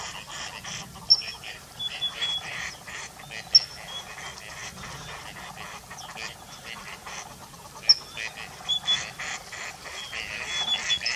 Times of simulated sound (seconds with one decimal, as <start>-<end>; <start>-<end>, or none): 1.1-3.1